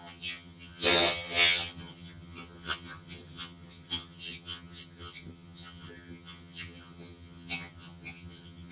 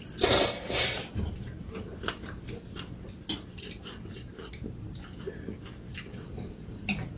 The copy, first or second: first